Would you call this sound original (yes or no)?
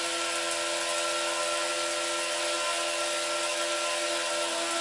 yes